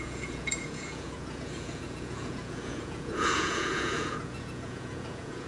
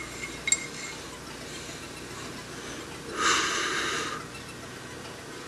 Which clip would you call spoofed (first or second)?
first